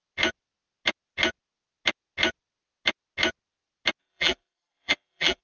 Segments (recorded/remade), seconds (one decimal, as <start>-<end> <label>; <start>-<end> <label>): 0.0-4.0 recorded; 4.0-5.4 remade